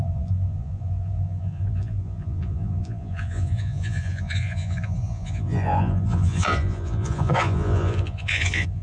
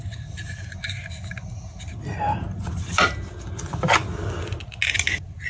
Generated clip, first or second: first